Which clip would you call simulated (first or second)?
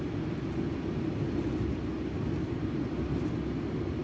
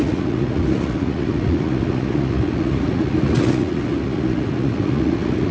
second